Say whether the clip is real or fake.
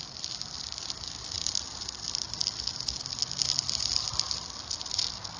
real